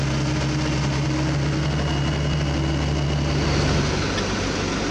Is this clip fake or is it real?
real